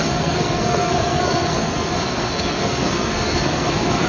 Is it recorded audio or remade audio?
remade